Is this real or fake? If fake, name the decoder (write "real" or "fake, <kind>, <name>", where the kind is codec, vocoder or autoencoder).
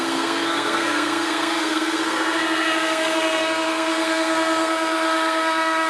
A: fake, codec, SNAC